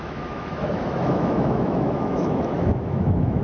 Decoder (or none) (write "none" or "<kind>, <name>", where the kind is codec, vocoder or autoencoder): autoencoder, DAC-VAE